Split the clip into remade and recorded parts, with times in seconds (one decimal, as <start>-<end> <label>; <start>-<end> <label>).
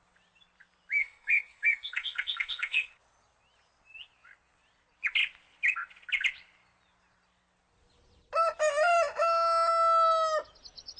0.0-1.0 recorded; 1.0-2.9 remade; 2.9-11.0 recorded